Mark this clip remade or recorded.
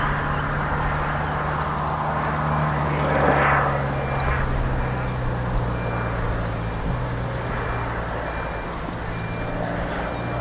recorded